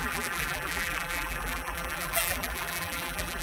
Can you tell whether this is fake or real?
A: fake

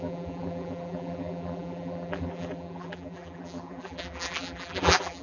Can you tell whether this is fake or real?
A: fake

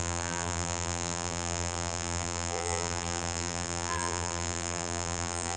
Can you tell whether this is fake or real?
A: fake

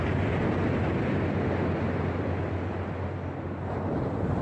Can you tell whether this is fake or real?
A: real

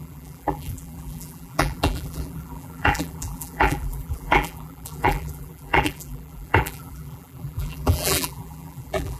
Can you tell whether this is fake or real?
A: fake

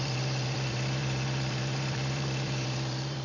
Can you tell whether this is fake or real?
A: fake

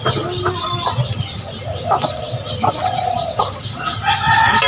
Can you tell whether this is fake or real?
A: fake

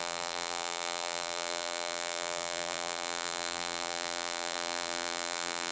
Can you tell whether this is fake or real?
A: fake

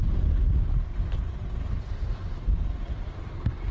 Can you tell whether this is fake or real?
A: real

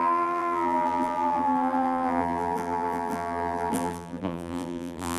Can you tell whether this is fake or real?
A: fake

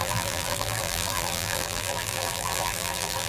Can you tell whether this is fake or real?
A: fake